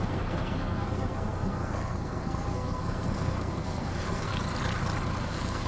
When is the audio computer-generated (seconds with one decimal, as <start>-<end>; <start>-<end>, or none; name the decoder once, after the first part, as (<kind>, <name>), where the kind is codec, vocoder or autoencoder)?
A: 0.0-4.3 (codec, SNAC); 5.2-5.7